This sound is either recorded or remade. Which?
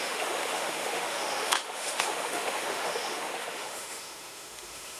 remade